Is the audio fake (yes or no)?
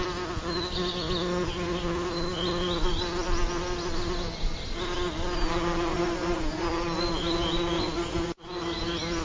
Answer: no